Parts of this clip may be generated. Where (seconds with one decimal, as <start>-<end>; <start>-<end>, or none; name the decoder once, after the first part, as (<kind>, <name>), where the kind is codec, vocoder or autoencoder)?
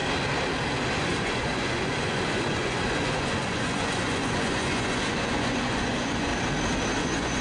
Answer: 1.0-6.3 (vocoder, Vocos); 7.0-7.4